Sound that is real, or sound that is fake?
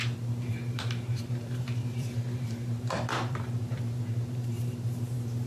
fake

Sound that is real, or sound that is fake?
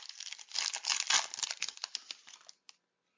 real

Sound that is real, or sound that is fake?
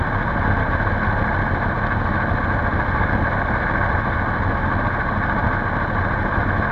real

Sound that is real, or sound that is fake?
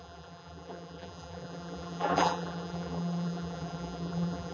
fake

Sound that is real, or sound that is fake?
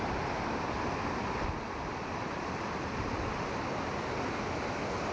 real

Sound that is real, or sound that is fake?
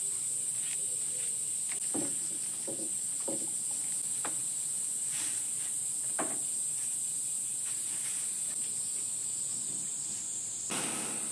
real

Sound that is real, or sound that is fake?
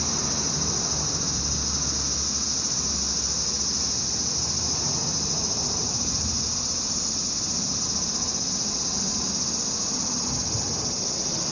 real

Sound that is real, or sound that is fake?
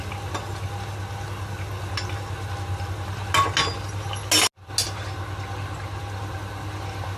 real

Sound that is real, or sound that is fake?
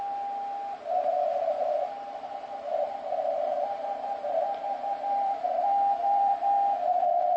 fake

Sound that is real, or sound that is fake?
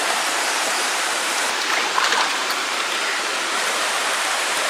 fake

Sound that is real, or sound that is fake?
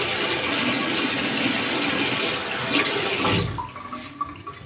real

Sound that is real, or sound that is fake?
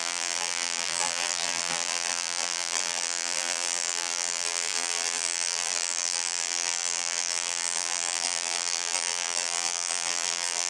fake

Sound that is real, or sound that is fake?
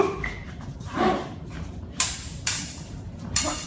fake